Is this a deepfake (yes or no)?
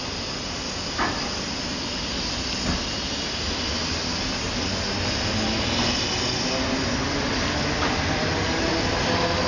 no